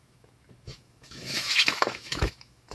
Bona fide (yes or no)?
no